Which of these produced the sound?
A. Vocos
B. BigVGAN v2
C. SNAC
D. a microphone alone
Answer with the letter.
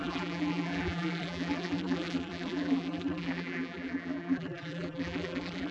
B